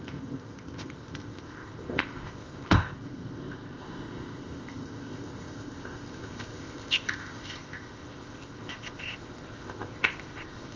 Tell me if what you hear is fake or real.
fake